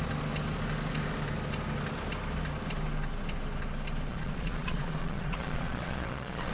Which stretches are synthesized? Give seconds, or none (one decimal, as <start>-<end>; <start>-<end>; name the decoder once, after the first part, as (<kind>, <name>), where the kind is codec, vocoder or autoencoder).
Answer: 4.1-6.5 (vocoder, Vocos)